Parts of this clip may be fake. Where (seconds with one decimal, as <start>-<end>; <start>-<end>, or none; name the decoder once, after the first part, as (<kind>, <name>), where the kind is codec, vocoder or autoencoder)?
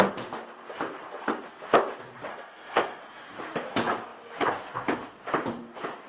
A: 2.3-3.0 (codec, SNAC)